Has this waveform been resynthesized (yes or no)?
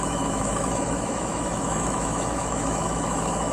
yes